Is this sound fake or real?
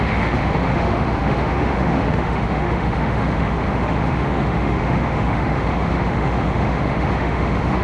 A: fake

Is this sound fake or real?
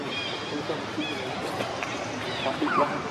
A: real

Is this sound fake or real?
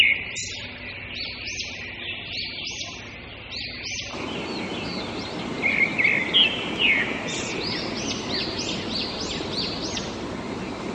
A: real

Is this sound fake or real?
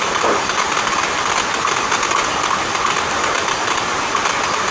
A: real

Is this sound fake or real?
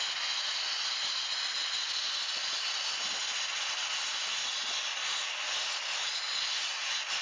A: real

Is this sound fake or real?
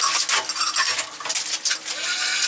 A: real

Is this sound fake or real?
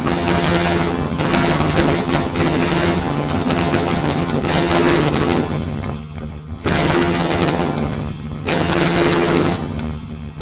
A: fake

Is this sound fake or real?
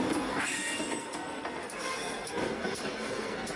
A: fake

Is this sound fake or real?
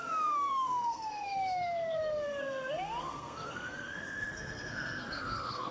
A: fake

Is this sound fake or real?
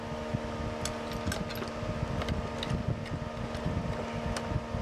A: real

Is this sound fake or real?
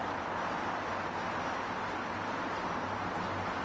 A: real